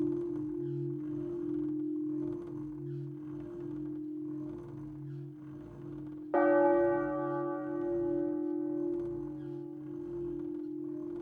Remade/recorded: recorded